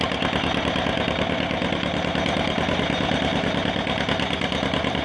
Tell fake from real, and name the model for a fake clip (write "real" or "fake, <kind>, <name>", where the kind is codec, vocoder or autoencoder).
real